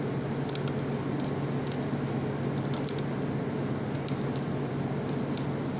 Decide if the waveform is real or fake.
real